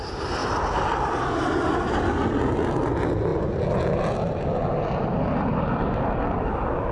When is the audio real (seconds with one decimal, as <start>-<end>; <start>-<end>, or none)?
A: 0.0-6.9